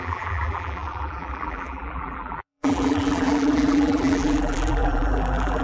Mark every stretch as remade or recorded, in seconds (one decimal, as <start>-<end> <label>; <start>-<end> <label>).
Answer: 0.0-5.6 remade